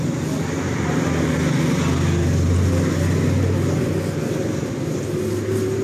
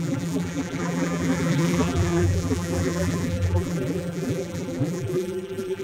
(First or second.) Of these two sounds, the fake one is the second